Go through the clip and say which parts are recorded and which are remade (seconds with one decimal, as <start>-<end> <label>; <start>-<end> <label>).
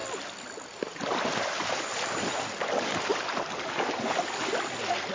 0.0-1.4 recorded; 1.4-3.1 remade; 3.1-5.1 recorded